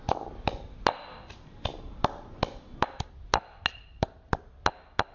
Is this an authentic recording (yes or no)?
yes